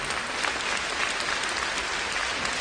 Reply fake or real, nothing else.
real